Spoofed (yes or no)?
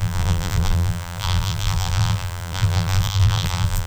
yes